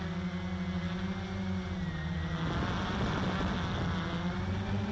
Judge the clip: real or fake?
real